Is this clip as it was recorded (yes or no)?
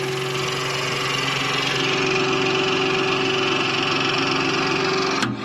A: yes